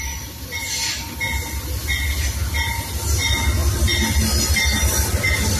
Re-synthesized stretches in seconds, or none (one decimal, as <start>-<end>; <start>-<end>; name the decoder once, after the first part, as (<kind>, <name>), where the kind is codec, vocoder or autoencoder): none